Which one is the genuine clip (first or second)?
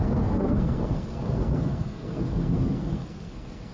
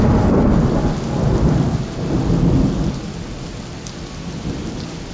second